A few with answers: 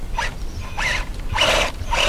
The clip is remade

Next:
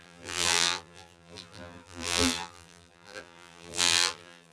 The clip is remade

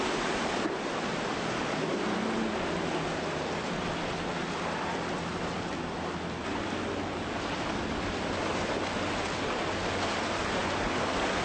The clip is recorded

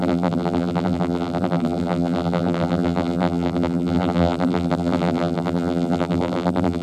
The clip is remade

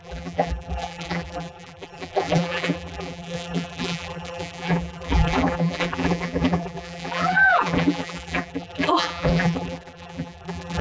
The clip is remade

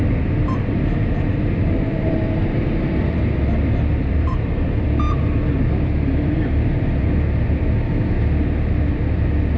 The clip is remade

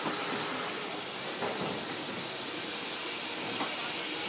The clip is recorded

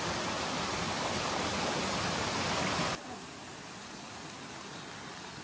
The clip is recorded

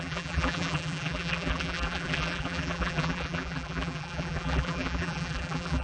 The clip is remade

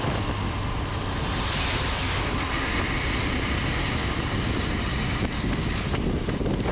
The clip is recorded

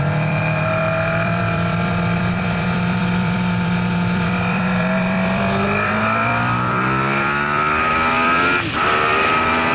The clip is remade